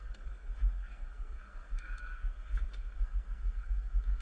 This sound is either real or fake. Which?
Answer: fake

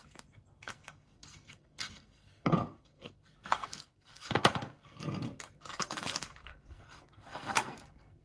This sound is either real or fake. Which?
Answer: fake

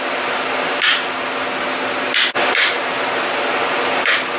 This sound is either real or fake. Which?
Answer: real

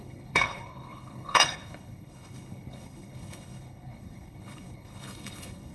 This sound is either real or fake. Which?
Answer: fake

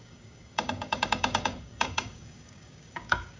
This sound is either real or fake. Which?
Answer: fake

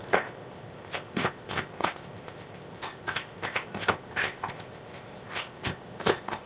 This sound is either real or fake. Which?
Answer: fake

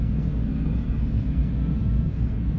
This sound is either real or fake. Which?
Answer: fake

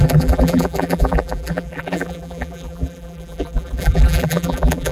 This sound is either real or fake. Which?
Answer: fake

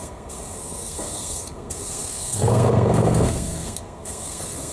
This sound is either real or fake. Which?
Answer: fake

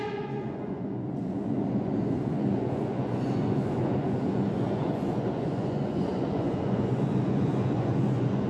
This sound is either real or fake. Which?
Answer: fake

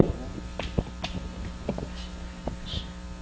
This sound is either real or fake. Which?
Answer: real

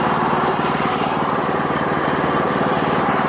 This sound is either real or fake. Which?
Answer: fake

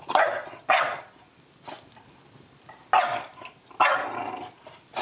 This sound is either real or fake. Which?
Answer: real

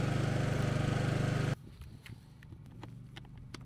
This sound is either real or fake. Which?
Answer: real